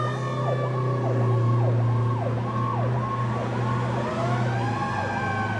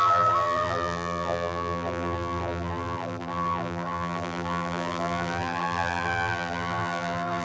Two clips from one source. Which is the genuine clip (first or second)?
first